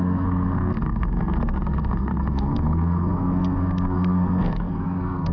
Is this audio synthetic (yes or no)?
yes